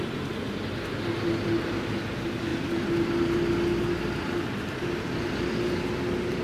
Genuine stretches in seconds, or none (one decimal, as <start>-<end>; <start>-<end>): 0.0-6.4

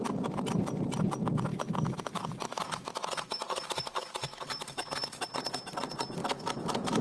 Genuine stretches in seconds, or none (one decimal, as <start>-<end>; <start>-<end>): 0.0-1.5; 5.2-6.2

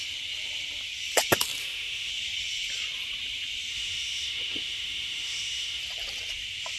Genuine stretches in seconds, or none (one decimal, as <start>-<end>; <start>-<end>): 0.0-1.6; 2.1-3.7; 5.8-6.8

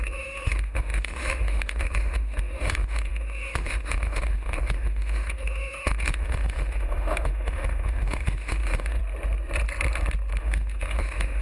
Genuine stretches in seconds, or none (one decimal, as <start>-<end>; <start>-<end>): 9.0-10.4

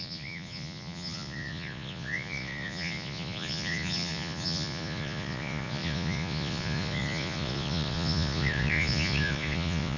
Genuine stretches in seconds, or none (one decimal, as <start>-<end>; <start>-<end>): none

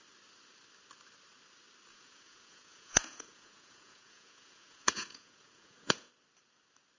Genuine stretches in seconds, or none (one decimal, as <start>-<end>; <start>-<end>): 0.0-1.9; 6.1-7.0

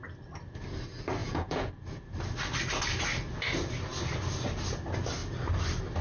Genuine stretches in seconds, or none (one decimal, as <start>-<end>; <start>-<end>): 0.0-1.2; 1.7-6.0